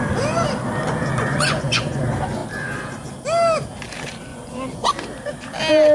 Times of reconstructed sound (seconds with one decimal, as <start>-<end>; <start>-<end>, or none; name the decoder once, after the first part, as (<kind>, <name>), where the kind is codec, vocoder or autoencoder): 1.2-2.0 (vocoder, Vocos); 4.3-4.9